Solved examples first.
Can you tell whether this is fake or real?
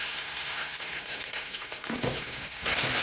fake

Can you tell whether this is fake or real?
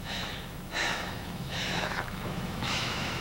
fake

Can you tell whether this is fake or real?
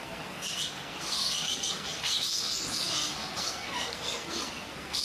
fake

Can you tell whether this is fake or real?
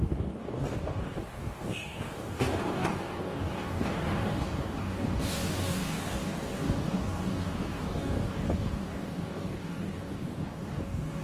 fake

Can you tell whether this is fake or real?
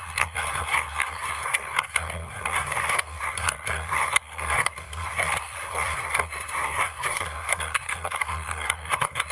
fake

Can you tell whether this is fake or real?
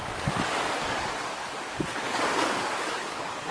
fake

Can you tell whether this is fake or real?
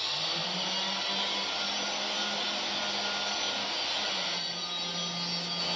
real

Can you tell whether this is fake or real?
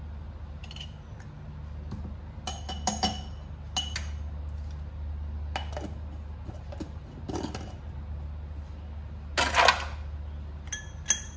real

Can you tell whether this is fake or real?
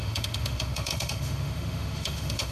fake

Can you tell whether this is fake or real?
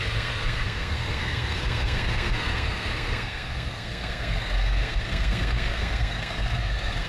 fake